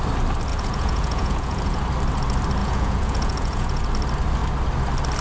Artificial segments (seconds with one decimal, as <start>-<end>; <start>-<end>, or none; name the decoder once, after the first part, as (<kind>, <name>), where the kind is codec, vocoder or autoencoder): 0.5-1.8 (vocoder, Vocos); 2.6-3.9